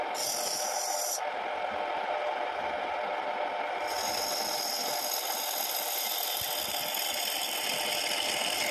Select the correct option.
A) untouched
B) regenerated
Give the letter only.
A